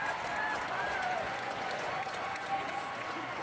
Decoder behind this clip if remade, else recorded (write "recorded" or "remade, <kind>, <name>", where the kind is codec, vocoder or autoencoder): remade, vocoder, Vocos